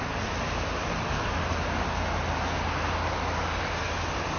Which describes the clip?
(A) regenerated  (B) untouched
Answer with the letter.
B